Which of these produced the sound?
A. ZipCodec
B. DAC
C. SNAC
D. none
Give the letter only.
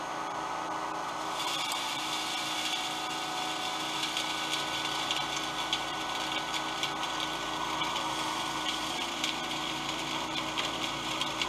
D